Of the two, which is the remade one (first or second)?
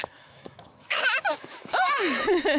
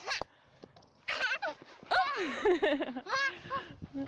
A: first